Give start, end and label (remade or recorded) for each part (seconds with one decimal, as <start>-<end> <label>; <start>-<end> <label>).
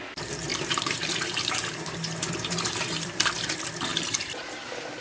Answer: 0.0-0.5 recorded; 0.5-3.5 remade; 3.5-3.9 recorded; 3.9-5.0 remade